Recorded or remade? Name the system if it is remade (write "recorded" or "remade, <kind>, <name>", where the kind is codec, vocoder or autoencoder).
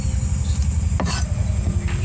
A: recorded